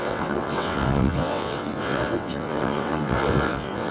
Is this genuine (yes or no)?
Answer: no